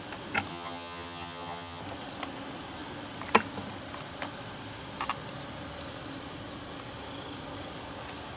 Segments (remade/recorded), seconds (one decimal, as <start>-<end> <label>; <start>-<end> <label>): 0.0-0.5 recorded; 0.5-1.8 remade; 1.8-8.4 recorded